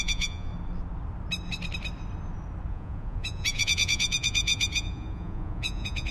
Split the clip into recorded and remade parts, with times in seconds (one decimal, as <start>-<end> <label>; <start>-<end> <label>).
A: 0.0-0.5 remade; 0.5-2.7 recorded; 2.7-6.1 remade